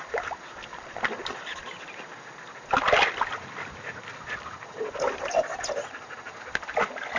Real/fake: real